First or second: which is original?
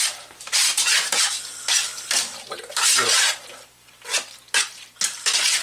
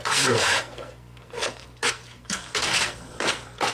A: first